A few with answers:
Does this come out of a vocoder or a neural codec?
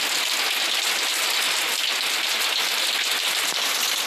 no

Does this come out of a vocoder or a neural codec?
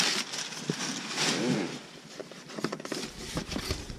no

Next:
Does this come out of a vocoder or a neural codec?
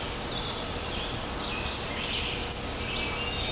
no